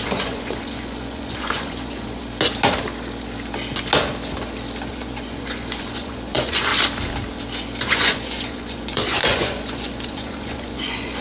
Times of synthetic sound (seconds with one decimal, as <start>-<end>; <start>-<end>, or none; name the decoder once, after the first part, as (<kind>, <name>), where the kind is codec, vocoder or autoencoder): 0.0-2.2 (vocoder, Vocos); 4.9-6.7; 7.8-11.2